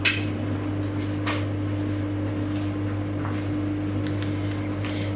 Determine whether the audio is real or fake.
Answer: real